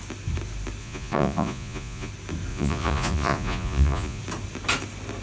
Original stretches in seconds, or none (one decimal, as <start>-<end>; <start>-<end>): 0.0-0.8; 2.1-2.5; 4.2-5.2